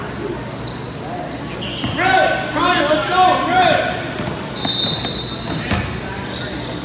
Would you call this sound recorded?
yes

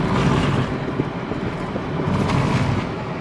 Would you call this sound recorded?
yes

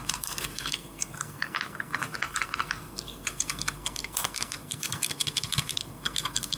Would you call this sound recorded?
no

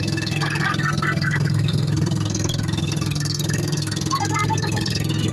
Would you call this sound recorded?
no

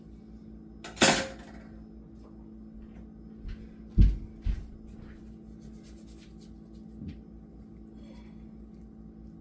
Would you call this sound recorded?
yes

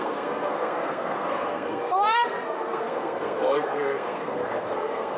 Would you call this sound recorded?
no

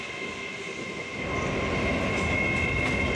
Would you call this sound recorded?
yes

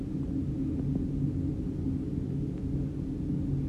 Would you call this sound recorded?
yes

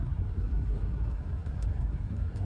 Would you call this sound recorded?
no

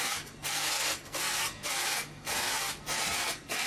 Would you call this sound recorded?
no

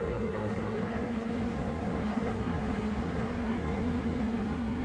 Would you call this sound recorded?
no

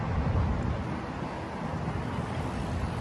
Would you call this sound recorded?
yes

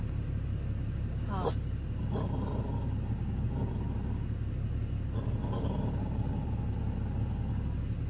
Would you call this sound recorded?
yes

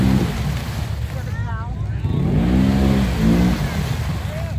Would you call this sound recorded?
yes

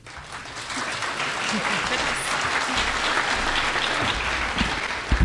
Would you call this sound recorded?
yes